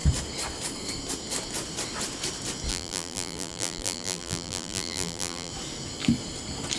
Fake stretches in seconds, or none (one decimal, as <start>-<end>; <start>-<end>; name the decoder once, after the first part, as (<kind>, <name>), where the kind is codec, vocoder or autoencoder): 2.7-5.5 (vocoder, BigVGAN v2)